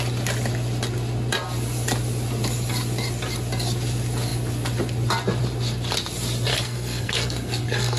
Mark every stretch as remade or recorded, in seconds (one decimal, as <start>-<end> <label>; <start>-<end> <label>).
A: 0.0-6.5 recorded; 6.5-8.0 remade